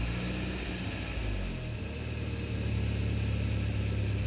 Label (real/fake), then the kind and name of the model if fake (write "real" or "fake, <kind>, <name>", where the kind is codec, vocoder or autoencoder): real